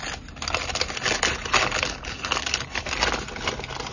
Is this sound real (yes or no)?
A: yes